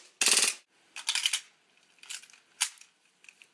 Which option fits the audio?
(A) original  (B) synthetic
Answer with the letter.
A